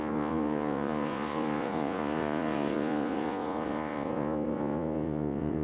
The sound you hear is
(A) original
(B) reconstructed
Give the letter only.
B